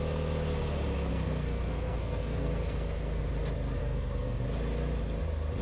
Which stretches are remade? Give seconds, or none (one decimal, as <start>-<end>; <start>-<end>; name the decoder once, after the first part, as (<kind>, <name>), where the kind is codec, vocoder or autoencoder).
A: 1.1-3.2 (codec, SNAC); 3.8-4.4